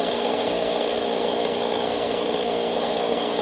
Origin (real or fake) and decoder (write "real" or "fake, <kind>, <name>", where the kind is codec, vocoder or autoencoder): fake, codec, SNAC